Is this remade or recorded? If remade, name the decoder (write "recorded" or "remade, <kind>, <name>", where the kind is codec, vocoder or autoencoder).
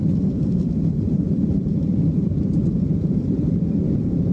remade, vocoder, BigVGAN v2